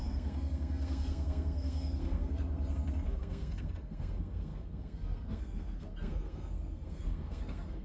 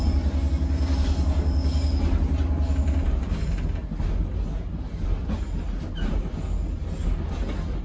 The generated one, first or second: first